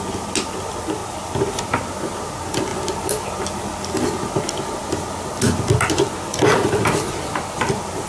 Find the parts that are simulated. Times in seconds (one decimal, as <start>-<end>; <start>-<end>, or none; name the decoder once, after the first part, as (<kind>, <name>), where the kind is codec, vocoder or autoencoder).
none